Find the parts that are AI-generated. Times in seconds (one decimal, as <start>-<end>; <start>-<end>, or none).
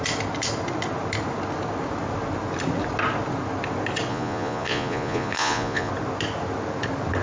4.1-5.9